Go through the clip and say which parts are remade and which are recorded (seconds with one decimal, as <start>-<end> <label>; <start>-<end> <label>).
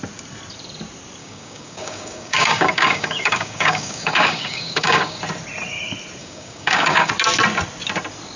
0.0-1.2 recorded; 1.2-5.2 remade; 5.2-6.2 recorded; 6.2-7.1 remade; 7.1-8.4 recorded